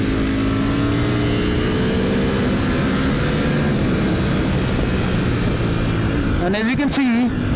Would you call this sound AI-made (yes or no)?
no